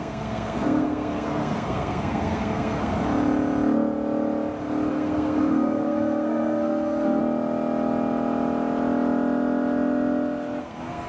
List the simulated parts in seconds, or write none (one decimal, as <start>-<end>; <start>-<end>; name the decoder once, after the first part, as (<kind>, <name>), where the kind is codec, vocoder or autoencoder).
0.0-2.9 (codec, SNAC); 4.9-7.2; 10.6-11.1